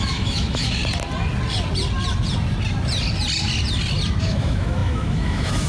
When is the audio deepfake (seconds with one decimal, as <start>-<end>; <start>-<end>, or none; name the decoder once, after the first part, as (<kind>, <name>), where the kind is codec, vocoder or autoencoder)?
0.0-0.8 (autoencoder, DAC-VAE); 4.2-5.7

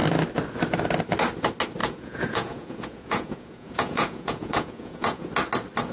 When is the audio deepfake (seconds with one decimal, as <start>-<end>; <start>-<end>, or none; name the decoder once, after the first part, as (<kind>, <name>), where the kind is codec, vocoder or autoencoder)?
1.8-5.3 (vocoder, Vocos)

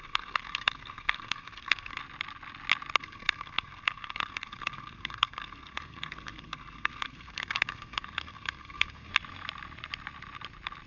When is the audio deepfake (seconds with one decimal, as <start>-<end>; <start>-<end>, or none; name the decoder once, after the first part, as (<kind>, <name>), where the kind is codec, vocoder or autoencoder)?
0.0-2.0 (codec, SNAC); 3.0-9.1

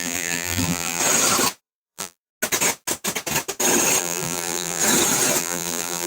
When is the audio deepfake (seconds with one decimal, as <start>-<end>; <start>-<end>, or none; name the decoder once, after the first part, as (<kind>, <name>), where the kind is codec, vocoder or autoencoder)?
0.0-1.0 (vocoder, BigVGAN v2); 1.6-2.3; 4.0-4.8; 5.4-6.1